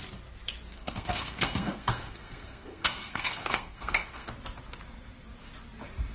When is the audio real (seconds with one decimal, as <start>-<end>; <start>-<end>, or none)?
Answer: 0.0-0.7; 4.3-6.1